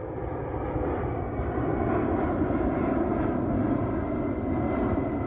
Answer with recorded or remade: recorded